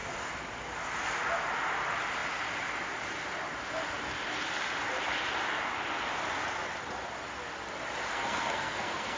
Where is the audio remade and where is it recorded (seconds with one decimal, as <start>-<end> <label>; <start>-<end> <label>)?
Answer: 0.0-8.1 recorded; 8.1-9.2 remade